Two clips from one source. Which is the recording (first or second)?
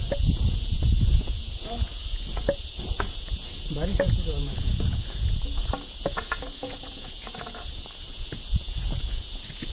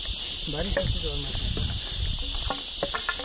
second